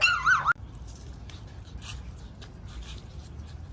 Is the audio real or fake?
real